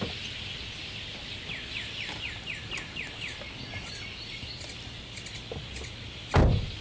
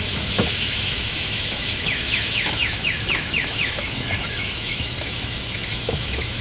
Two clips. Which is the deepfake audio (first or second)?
second